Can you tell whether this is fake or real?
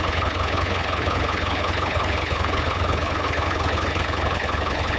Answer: fake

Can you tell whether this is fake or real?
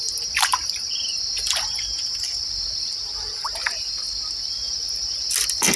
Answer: real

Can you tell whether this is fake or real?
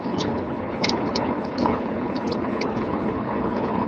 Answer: fake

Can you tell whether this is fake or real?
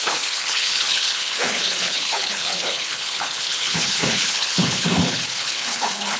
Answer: fake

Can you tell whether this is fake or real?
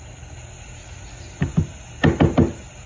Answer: real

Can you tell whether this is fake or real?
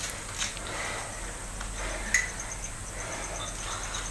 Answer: real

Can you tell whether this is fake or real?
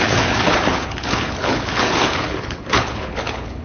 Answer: fake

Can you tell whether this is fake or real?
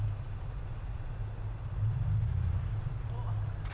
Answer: real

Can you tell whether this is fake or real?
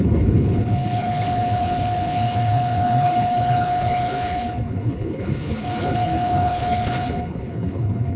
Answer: fake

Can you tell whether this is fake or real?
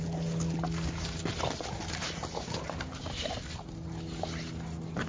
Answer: real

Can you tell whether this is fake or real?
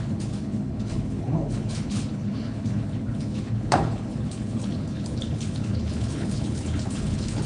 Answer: fake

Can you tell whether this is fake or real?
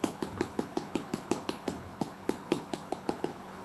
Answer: fake